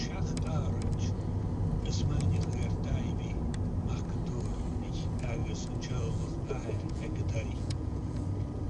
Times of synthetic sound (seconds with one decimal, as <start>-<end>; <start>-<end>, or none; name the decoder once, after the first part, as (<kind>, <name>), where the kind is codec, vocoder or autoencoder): 5.4-8.2 (vocoder, Vocos)